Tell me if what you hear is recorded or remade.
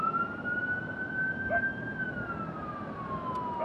recorded